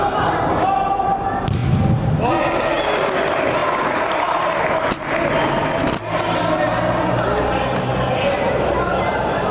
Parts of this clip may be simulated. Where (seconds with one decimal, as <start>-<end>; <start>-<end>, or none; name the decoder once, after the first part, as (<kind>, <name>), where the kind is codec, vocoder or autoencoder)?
none